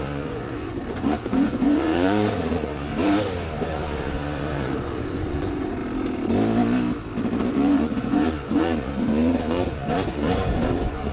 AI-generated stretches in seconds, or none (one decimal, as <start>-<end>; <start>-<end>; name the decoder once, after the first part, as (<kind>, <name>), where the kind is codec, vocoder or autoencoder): 0.0-2.9 (vocoder, Vocos); 3.7-5.8; 7.5-11.1